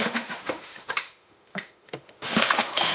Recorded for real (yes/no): no